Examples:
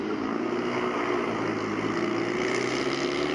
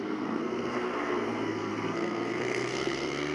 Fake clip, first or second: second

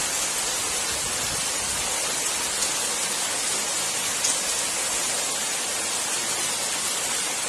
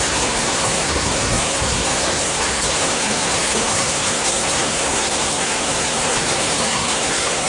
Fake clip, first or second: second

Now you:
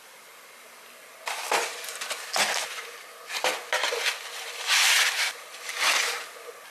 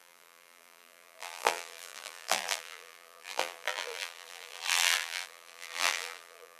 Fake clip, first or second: second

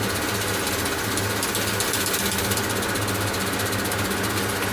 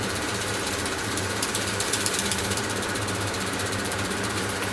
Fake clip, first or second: second